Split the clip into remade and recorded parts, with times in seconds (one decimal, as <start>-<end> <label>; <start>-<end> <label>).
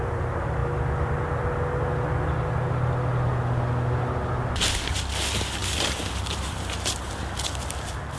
0.0-5.6 recorded; 5.6-7.1 remade; 7.1-8.2 recorded